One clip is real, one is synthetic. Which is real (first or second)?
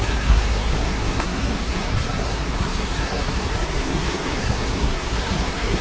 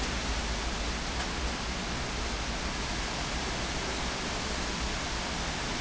second